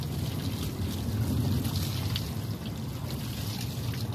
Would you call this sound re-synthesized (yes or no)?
no